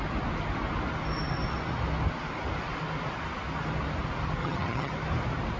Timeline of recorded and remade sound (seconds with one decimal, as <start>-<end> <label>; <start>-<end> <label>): 0.0-4.4 recorded; 4.4-4.9 remade; 4.9-5.6 recorded